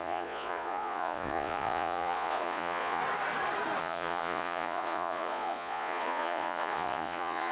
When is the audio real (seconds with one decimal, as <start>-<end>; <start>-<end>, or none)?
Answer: 3.0-3.8